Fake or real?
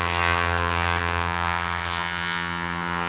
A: fake